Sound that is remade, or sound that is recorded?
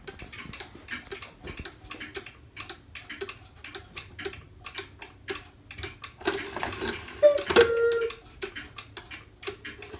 recorded